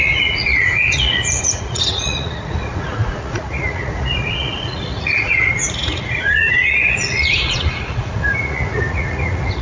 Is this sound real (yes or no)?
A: no